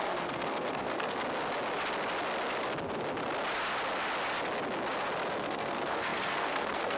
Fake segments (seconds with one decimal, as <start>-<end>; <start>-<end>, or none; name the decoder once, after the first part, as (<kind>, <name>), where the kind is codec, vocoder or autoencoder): 0.0-1.2 (codec, SNAC); 5.4-7.0